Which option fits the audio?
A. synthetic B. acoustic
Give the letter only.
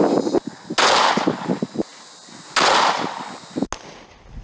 B